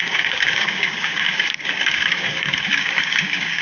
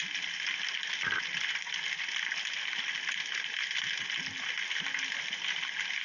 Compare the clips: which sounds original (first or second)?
second